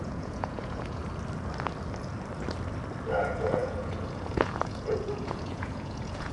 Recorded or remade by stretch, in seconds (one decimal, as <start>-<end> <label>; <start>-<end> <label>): 0.0-1.0 remade; 1.0-3.2 recorded; 3.2-6.3 remade